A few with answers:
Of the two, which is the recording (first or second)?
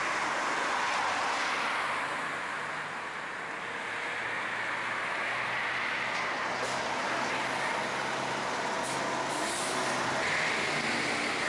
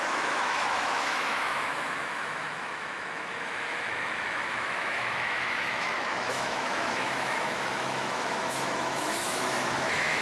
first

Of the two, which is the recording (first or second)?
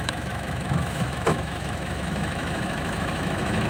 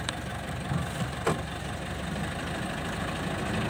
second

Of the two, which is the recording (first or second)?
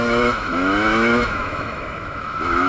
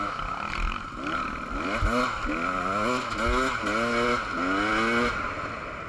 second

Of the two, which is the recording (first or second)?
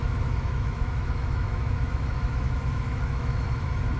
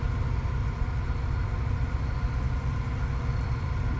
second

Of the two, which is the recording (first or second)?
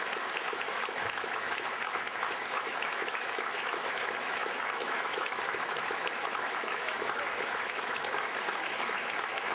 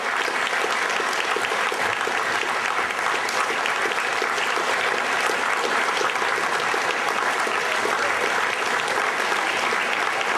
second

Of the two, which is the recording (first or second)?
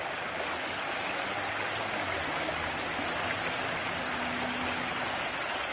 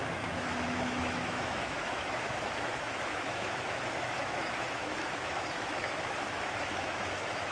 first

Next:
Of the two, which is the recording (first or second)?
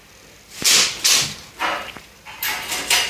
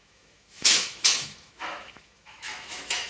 first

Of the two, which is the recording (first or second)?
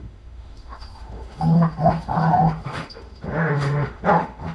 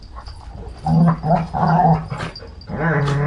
second